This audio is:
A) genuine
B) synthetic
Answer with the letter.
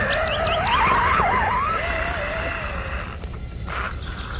A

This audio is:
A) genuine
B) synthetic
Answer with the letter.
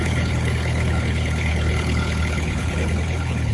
B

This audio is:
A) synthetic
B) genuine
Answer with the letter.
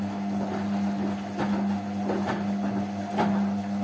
B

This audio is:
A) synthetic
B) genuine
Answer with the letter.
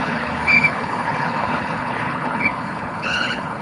A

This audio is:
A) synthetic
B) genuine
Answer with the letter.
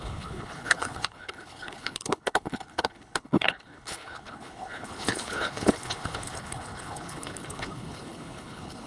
A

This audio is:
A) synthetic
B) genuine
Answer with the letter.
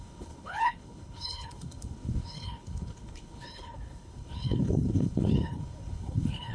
A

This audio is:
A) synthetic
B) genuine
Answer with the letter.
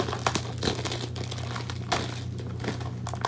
B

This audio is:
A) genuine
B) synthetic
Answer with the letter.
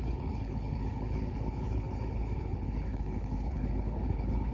B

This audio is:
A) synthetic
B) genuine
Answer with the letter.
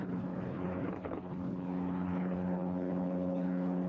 A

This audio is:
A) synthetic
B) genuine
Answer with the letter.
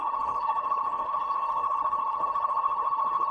A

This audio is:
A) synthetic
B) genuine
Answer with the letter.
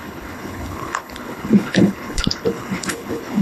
A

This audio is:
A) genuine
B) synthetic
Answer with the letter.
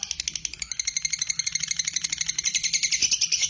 A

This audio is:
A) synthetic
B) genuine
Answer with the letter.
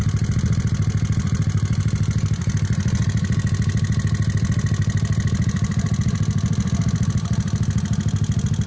B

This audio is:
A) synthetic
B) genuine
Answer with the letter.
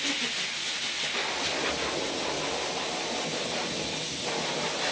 B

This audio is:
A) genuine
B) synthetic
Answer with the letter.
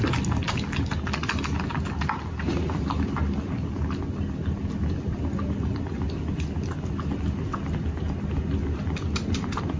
A